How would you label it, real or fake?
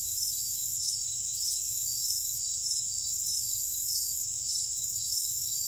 fake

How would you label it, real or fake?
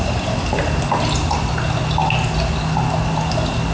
real